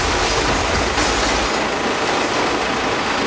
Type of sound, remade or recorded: recorded